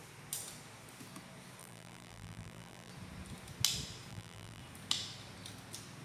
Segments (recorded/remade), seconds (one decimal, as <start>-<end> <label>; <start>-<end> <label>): 0.0-1.6 recorded; 1.6-2.9 remade; 2.9-4.1 recorded; 4.1-4.6 remade; 4.6-6.0 recorded

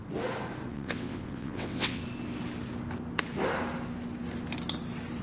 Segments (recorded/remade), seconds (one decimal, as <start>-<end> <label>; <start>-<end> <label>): 0.0-0.7 recorded; 0.7-2.0 remade; 2.0-5.2 recorded

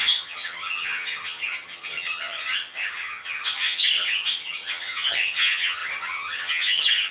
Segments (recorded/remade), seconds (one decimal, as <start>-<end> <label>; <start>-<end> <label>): 0.0-7.1 remade

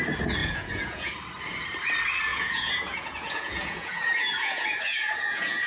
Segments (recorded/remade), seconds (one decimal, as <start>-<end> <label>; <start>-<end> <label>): 0.0-0.4 recorded; 0.4-1.1 remade; 1.1-2.3 recorded; 2.3-5.7 remade

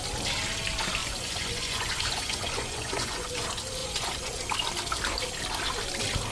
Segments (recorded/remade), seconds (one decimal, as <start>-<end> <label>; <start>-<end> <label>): 0.0-1.0 recorded; 1.0-3.4 remade; 3.4-3.8 recorded; 3.8-4.4 remade; 4.4-6.3 recorded

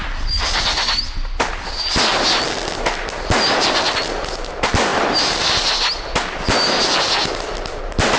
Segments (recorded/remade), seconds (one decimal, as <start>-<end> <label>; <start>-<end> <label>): 0.0-8.2 recorded